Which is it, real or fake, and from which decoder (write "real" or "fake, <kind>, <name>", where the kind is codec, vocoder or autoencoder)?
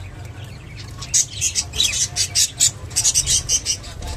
real